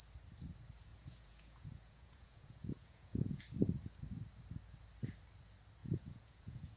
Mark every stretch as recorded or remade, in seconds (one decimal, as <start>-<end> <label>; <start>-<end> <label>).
0.0-0.9 recorded; 0.9-3.4 remade; 3.4-5.8 recorded; 5.8-6.8 remade